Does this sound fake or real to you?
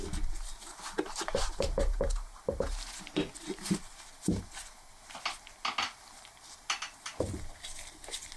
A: real